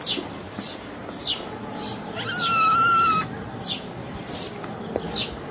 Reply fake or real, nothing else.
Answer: real